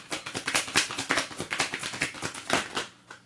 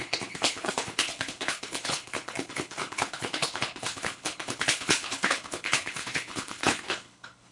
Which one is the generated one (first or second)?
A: second